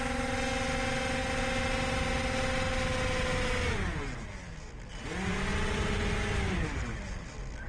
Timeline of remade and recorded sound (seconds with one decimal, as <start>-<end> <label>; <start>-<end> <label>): 0.0-7.7 recorded